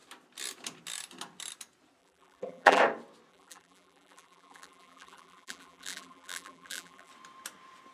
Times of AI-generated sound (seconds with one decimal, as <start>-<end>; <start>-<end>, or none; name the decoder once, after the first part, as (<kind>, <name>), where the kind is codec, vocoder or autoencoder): 2.0-2.8 (vocoder, BigVGAN v2); 3.3-7.1